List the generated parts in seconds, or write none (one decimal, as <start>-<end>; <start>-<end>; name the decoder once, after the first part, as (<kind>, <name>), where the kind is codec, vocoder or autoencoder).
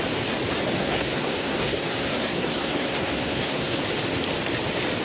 0.8-3.8 (codec, SNAC)